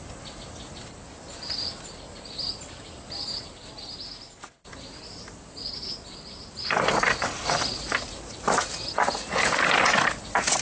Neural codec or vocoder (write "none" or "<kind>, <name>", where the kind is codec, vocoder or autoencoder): none